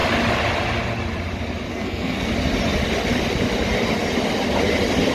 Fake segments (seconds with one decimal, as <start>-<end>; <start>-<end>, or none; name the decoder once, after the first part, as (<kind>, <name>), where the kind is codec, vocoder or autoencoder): 1.7-2.3 (codec, SNAC)